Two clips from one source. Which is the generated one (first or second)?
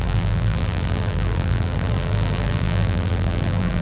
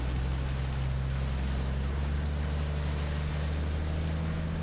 first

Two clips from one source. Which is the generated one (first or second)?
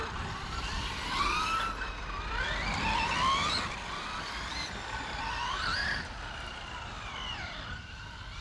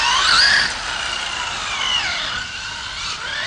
first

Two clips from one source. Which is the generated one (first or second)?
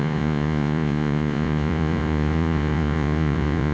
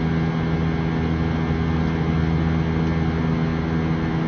first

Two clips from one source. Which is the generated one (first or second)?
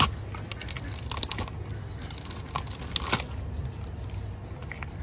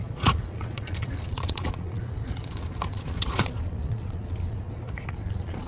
second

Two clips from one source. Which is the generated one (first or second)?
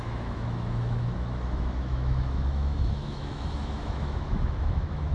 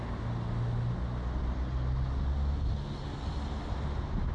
first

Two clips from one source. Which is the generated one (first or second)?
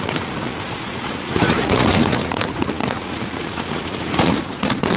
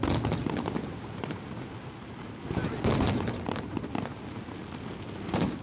first